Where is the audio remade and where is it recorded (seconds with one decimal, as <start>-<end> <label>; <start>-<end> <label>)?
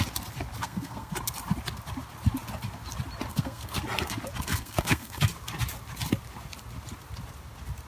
0.0-0.6 recorded; 0.6-1.1 remade; 1.1-3.3 recorded; 3.3-3.8 remade; 3.8-4.5 recorded; 4.5-5.2 remade; 5.2-7.9 recorded